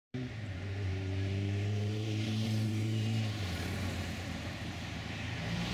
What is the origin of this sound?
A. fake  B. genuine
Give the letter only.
A